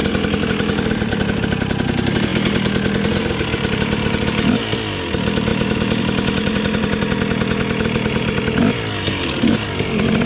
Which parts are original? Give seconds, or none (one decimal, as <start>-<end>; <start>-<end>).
1.1-10.3